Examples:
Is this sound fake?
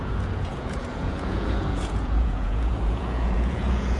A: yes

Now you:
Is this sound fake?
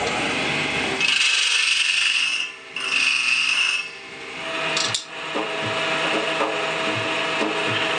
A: no